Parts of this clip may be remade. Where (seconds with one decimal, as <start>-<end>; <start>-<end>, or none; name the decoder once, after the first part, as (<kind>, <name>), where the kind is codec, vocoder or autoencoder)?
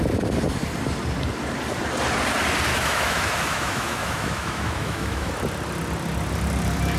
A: 2.7-5.3 (autoencoder, DAC-VAE)